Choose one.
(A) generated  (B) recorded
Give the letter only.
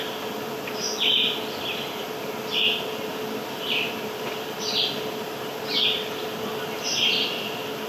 B